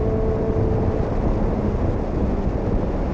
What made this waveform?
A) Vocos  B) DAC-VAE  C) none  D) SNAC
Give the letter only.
C